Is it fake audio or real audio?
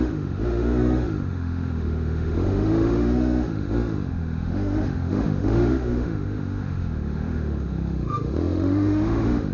fake